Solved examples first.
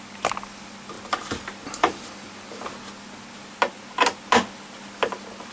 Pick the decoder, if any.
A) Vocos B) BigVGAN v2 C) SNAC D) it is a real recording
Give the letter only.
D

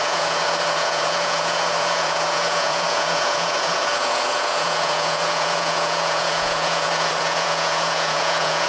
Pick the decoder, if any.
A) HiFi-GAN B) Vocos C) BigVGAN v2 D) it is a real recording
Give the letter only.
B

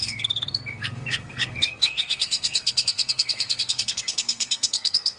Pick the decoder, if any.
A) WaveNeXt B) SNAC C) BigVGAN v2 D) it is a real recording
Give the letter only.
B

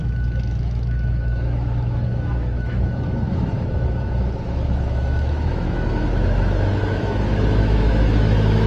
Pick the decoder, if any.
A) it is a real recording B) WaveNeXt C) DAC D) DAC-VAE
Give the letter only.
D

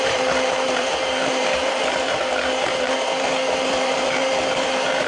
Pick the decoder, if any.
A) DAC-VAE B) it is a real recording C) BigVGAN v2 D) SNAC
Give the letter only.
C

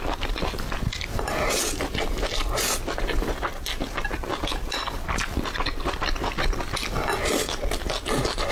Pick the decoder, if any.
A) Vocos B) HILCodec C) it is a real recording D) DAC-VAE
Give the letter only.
C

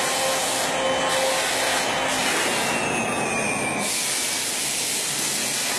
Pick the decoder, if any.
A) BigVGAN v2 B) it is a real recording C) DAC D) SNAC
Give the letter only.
B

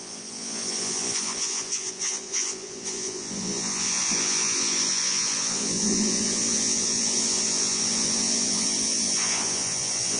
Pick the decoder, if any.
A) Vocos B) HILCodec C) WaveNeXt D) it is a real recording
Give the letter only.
A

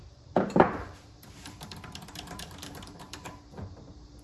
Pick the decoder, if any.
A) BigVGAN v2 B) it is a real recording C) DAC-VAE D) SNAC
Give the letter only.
A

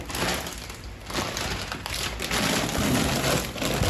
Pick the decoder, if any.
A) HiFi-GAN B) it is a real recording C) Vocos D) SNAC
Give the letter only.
B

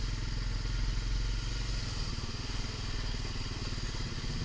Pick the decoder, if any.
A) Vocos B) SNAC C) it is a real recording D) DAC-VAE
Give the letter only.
C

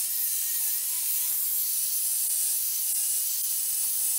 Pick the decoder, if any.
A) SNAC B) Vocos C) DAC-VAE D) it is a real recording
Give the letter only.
D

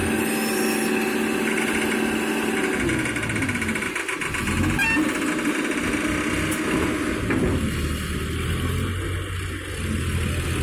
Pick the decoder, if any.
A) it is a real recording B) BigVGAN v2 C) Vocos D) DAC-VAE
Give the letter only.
A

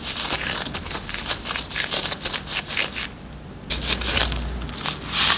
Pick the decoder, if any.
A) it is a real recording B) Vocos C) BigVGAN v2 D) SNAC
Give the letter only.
C